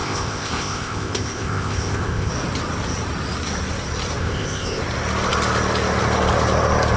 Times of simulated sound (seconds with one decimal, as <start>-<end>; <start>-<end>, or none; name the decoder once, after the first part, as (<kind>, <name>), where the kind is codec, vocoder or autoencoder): 0.0-2.3 (codec, ZipCodec); 4.2-4.8